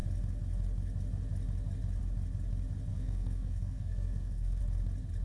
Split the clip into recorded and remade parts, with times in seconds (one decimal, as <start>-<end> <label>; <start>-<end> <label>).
0.0-2.9 recorded; 2.9-4.6 remade; 4.6-5.2 recorded